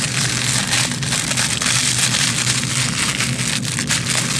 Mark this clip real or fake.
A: real